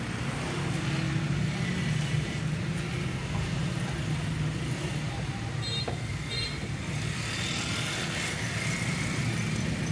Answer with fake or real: real